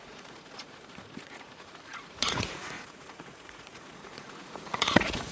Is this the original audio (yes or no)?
no